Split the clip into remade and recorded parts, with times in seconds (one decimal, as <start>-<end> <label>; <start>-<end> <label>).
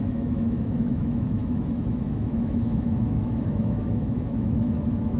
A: 0.0-5.2 remade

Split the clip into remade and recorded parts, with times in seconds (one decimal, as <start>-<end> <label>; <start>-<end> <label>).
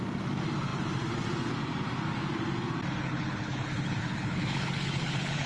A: 0.0-3.0 recorded; 3.0-5.5 remade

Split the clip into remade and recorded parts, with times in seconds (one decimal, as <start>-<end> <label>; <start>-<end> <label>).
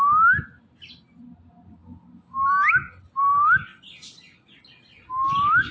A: 0.0-5.7 recorded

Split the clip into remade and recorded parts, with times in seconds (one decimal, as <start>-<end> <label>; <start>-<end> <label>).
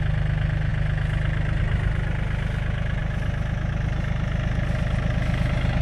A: 0.0-5.8 recorded